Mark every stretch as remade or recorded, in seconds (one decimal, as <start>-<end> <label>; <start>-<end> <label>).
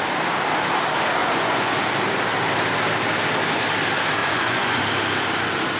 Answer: 0.0-1.2 recorded; 1.2-1.7 remade; 1.7-4.2 recorded; 4.2-4.8 remade; 4.8-5.8 recorded